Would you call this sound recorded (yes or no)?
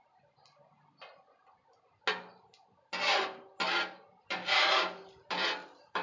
yes